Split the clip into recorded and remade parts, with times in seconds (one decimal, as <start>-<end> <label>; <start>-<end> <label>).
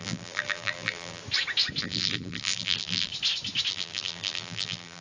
0.0-1.2 remade; 1.2-1.8 recorded; 1.8-3.1 remade; 3.1-3.7 recorded; 3.7-5.0 remade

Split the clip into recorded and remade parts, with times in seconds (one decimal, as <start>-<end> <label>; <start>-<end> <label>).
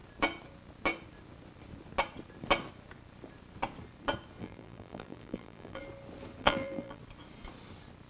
0.0-4.4 recorded; 4.4-5.8 remade; 5.8-6.4 recorded; 6.4-7.0 remade; 7.0-8.1 recorded